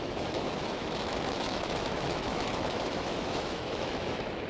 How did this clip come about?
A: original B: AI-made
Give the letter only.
B